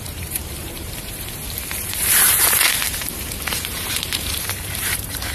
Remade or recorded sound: remade